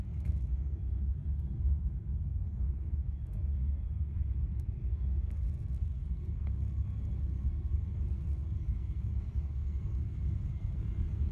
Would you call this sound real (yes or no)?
no